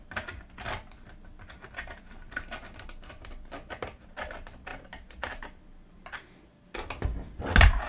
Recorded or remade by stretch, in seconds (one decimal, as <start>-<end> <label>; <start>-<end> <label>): 0.0-7.9 recorded

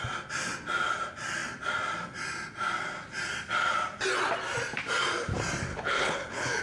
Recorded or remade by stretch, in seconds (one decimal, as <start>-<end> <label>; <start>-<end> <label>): 0.0-5.7 recorded; 5.7-6.6 remade